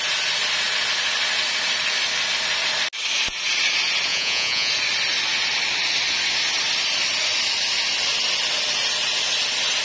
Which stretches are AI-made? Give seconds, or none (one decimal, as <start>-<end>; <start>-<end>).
4.1-4.7

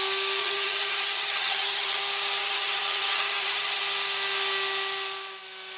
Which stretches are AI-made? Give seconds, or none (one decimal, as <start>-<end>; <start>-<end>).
0.4-2.0; 2.4-3.8

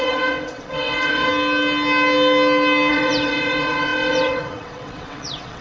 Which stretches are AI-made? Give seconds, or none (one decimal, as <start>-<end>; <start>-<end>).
0.0-1.3; 2.9-5.6

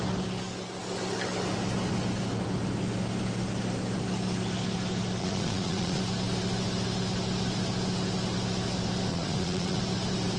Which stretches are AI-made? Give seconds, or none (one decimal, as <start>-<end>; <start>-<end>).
5.2-6.0; 9.1-9.8

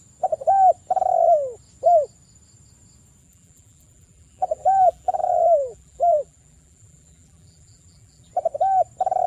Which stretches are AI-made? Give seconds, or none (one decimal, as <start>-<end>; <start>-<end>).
3.2-8.3